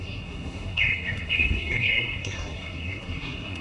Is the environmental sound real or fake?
fake